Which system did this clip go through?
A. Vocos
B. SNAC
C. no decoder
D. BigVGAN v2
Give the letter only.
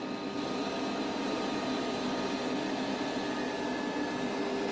C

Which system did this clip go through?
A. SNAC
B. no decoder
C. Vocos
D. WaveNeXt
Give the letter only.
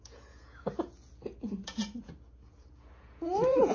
C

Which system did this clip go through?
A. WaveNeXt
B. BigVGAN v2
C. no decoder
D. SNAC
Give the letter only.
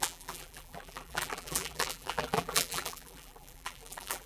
B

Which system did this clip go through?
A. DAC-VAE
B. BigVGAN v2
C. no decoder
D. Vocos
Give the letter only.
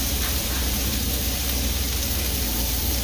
B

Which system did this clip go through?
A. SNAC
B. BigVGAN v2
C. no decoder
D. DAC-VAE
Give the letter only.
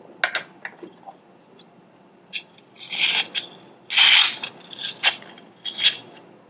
C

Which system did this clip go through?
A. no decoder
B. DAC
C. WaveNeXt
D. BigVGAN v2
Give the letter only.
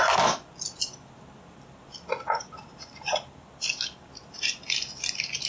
A